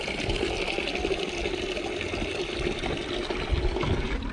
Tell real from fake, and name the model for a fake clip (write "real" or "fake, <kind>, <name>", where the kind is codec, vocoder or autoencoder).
real